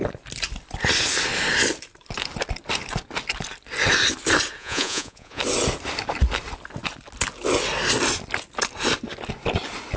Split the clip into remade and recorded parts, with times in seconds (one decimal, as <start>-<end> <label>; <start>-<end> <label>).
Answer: 0.0-4.6 recorded; 4.6-5.4 remade; 5.4-10.0 recorded